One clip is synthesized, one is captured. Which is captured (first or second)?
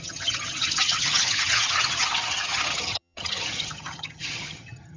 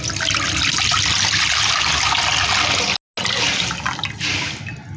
second